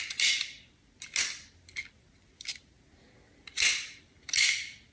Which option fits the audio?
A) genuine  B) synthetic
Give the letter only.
A